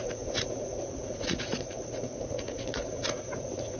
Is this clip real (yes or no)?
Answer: no